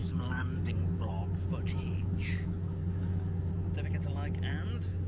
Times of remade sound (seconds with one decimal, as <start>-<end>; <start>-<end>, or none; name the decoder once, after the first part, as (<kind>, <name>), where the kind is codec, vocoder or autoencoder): 0.0-1.2 (codec, DAC); 2.0-3.5